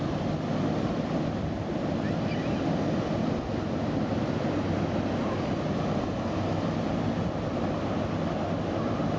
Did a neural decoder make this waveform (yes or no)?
no